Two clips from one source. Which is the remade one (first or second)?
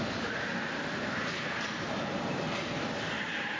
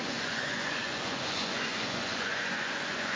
second